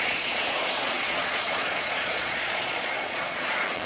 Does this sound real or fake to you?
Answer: fake